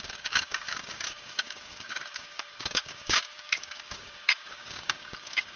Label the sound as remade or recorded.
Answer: remade